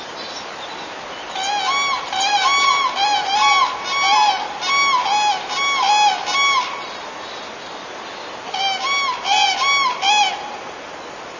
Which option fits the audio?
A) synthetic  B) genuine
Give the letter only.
B